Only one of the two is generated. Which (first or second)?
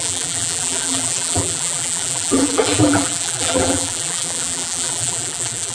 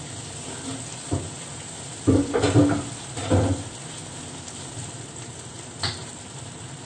first